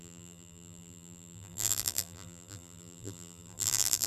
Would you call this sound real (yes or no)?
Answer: no